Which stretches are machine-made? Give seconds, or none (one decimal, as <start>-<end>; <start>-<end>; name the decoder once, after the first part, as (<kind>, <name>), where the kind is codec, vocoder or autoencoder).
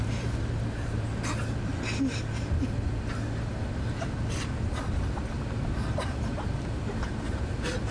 0.0-1.7 (vocoder, BigVGAN v2); 5.9-7.9